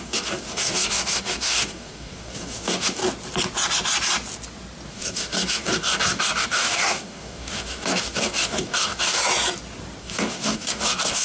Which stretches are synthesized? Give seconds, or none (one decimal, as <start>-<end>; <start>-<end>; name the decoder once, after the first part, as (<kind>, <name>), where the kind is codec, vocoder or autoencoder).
0.0-3.0 (codec, DAC); 4.9-9.2; 10.0-11.2